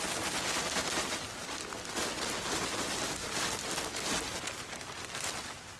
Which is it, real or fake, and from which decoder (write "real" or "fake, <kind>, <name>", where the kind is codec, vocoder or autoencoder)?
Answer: real